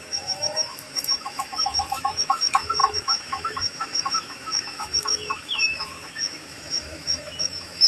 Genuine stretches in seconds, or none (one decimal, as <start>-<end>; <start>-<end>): none